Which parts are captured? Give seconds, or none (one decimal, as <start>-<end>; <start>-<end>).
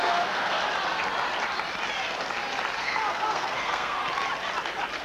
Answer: 0.6-2.8; 4.0-5.0